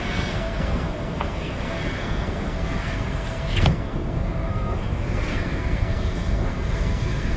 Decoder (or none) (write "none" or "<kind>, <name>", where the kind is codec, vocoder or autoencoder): codec, SNAC